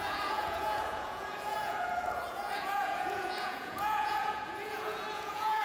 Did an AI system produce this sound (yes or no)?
yes